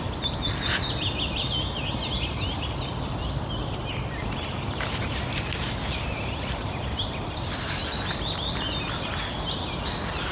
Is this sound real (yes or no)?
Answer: yes